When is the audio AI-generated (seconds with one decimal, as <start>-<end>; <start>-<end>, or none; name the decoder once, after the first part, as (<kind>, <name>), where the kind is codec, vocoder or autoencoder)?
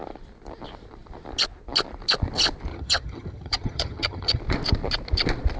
2.7-4.4 (vocoder, HiFi-GAN)